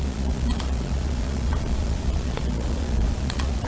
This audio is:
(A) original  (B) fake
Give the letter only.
B